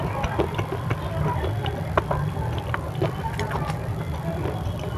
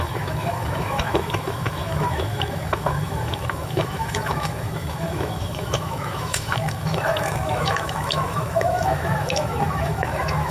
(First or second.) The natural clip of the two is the first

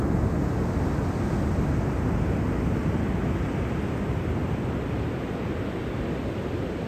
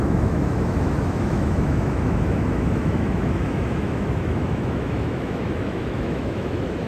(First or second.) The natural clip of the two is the first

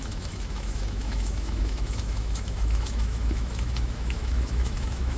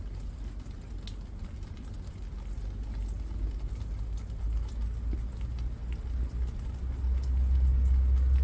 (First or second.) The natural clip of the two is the second